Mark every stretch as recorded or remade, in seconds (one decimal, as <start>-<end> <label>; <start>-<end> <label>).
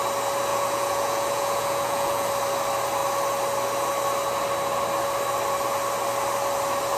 0.0-0.5 recorded; 0.5-2.3 remade; 2.3-7.0 recorded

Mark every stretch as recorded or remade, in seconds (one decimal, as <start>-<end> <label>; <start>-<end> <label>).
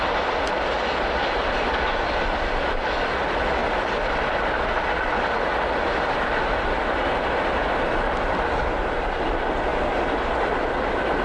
0.0-3.6 recorded; 3.6-4.1 remade; 4.1-11.2 recorded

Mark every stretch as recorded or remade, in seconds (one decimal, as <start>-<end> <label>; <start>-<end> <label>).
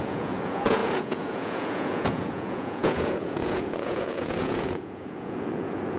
0.0-6.0 remade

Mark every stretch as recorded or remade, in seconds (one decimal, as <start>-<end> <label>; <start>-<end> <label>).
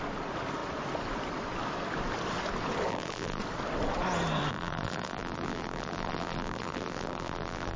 0.0-2.9 recorded; 2.9-3.4 remade; 3.4-4.5 recorded; 4.5-7.8 remade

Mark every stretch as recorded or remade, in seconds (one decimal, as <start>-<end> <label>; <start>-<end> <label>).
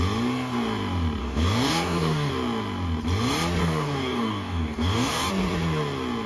0.0-1.2 recorded; 1.2-2.3 remade; 2.3-3.6 recorded; 3.6-5.3 remade; 5.3-6.3 recorded